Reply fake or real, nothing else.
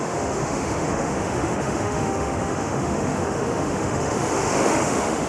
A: fake